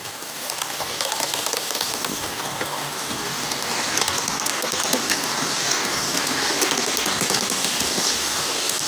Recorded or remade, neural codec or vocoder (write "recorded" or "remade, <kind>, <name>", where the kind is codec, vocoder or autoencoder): remade, codec, DAC